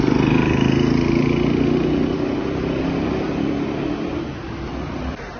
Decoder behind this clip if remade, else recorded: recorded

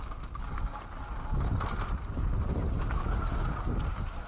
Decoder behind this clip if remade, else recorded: recorded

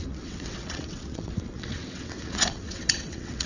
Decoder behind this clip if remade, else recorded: remade, vocoder, WaveNeXt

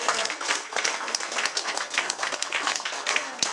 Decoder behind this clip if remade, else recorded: remade, codec, SNAC